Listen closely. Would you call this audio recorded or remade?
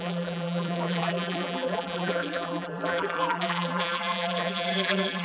remade